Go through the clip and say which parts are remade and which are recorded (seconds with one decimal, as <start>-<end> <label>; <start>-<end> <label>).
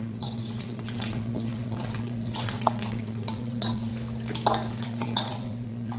0.0-3.9 remade; 3.9-4.7 recorded; 4.7-6.0 remade